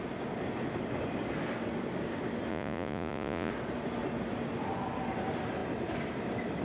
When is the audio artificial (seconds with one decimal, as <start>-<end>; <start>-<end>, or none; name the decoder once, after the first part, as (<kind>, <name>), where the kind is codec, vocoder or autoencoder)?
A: 2.5-3.5 (vocoder, Vocos)